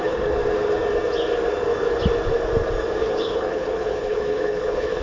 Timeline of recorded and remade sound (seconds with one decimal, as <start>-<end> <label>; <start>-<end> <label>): 0.0-0.4 remade; 0.4-3.0 recorded; 3.0-5.0 remade